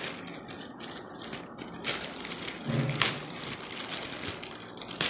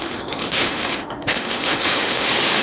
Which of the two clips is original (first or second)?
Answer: first